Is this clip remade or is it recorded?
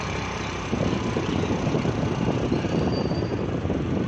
remade